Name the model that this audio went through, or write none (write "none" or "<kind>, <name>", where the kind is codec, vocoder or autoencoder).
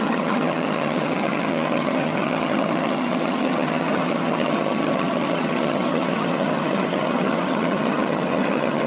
vocoder, HiFi-GAN